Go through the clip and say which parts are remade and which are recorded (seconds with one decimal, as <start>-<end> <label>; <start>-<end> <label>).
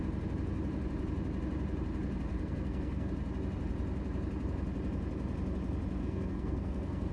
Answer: 0.0-2.3 recorded; 2.3-3.1 remade; 3.1-6.0 recorded; 6.0-7.1 remade